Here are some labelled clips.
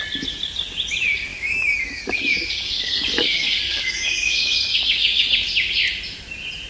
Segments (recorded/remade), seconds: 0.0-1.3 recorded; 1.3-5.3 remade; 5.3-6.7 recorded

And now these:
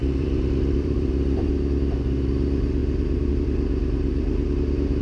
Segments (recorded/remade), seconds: 0.0-1.5 remade; 1.5-2.8 recorded; 2.8-3.3 remade; 3.3-5.0 recorded

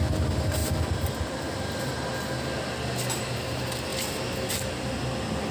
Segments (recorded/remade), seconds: 0.0-0.6 recorded; 0.6-1.8 remade; 1.8-5.5 recorded

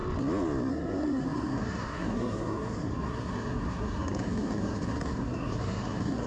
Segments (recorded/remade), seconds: 0.0-0.7 recorded; 0.7-6.3 remade

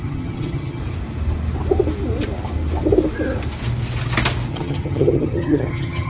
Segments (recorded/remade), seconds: 0.0-0.8 remade; 0.8-4.5 recorded; 4.5-6.1 remade

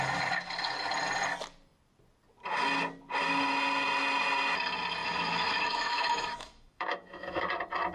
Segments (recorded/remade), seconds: 0.0-5.0 recorded; 5.0-7.4 remade; 7.4-7.9 recorded